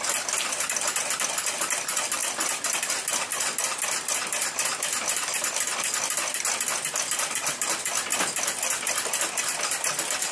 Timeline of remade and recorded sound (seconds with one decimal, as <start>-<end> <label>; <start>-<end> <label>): 0.0-10.3 recorded